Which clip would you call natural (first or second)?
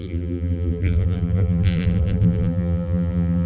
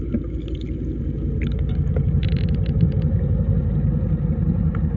second